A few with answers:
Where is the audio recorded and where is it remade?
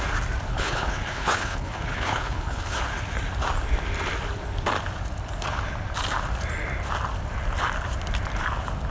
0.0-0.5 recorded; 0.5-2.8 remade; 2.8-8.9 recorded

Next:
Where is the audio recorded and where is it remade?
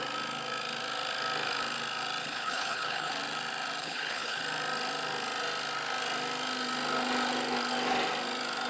0.0-2.2 recorded; 2.2-3.1 remade; 3.1-3.8 recorded; 3.8-4.4 remade; 4.4-8.7 recorded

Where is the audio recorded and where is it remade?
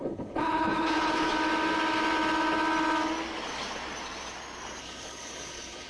0.0-1.3 remade; 1.3-4.8 recorded; 4.8-5.9 remade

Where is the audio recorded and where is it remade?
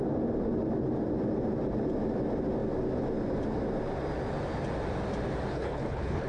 0.0-5.5 recorded; 5.5-6.3 remade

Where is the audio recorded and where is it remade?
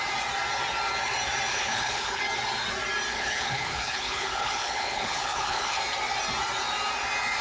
0.0-1.5 recorded; 1.5-2.2 remade; 2.2-3.1 recorded; 3.1-5.8 remade; 5.8-7.4 recorded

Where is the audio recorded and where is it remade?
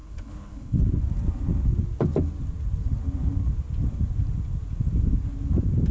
0.0-1.0 remade; 1.0-5.9 recorded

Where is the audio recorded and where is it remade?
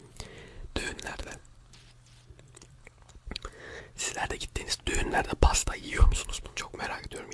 0.0-0.5 recorded; 0.5-1.7 remade; 1.7-2.8 recorded; 2.8-3.8 remade; 3.8-5.6 recorded; 5.6-6.6 remade; 6.6-7.3 recorded